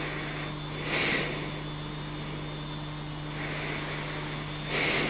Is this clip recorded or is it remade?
recorded